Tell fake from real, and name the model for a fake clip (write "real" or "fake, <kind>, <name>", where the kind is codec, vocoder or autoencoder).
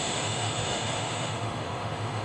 fake, autoencoder, DAC-VAE